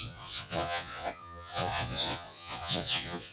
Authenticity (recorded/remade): remade